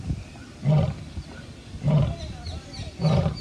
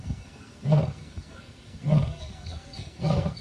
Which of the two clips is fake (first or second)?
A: second